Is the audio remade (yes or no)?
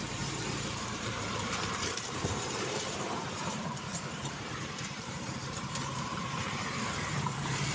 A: yes